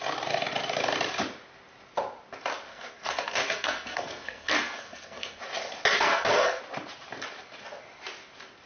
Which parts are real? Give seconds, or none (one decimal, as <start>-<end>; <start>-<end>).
0.0-2.7; 5.4-5.9; 6.6-8.7